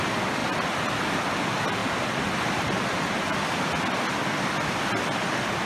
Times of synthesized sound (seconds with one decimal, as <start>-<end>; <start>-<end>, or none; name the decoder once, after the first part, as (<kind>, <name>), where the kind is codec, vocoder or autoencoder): none

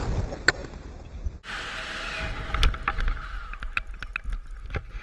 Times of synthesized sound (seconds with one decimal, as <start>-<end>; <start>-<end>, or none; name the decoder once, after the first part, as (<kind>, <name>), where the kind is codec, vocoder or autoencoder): none